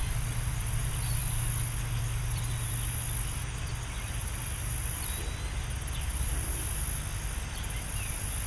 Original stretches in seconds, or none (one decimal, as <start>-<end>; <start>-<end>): 0.0-8.5